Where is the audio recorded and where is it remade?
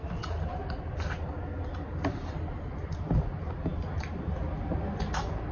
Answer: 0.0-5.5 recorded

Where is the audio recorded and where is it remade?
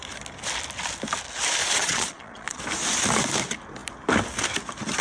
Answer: 0.0-1.6 recorded; 1.6-2.6 remade; 2.6-5.0 recorded